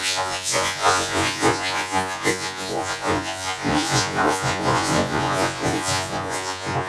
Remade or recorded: remade